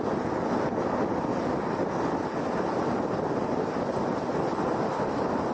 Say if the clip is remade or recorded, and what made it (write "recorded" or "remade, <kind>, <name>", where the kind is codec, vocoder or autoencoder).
recorded